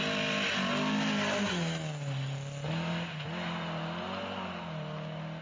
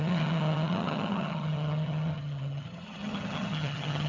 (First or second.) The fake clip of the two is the second